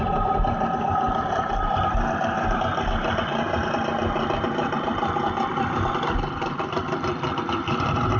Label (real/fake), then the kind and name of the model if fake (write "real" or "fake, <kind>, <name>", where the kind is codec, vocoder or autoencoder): real